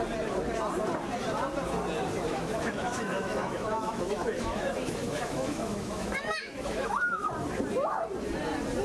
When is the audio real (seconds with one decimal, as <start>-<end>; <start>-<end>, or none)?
0.0-2.3; 7.3-8.8